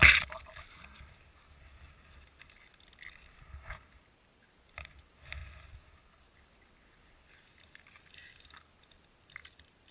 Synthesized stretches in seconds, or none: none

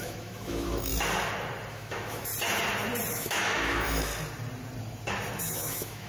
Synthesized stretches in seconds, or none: 0.0-0.9 (autoencoder, DAC-VAE); 1.7-2.3; 3.1-4.1; 5.4-6.1

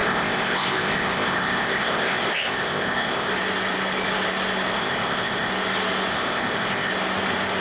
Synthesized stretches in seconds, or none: 0.0-3.3 (codec, ZipCodec); 4.7-5.5; 6.1-6.9

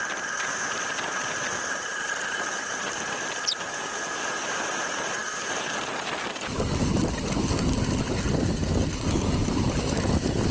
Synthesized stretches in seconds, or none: none

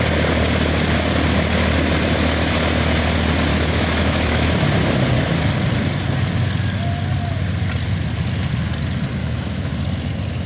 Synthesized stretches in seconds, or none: 3.5-4.5 (autoencoder, DAC-VAE); 9.2-9.7